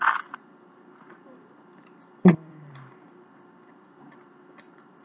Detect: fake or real fake